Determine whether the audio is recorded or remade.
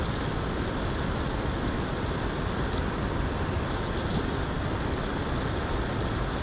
recorded